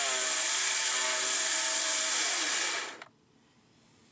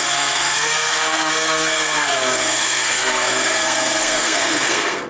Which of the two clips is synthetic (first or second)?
second